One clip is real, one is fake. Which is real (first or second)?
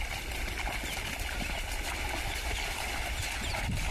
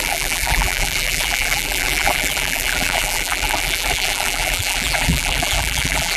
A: first